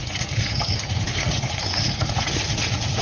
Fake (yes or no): yes